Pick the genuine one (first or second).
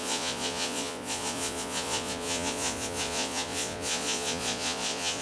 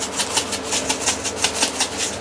second